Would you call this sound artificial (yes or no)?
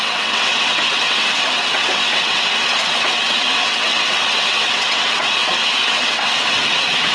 yes